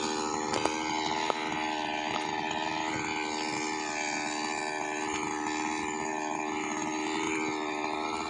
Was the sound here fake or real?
real